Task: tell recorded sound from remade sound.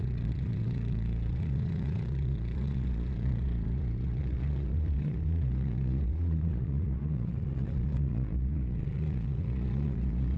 remade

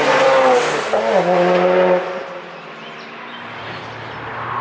recorded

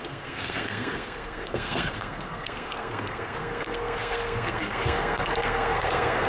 remade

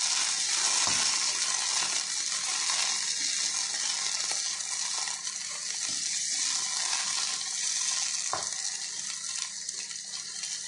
recorded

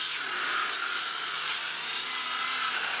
recorded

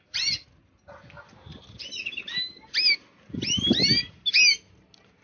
recorded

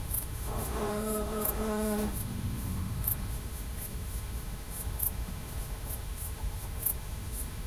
remade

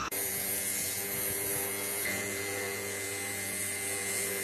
remade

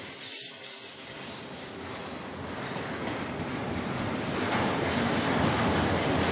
recorded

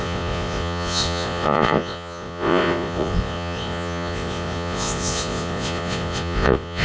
remade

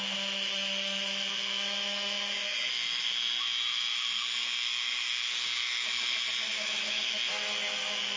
remade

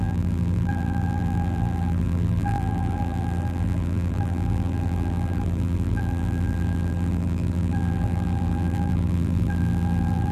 remade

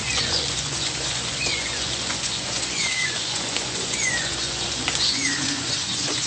remade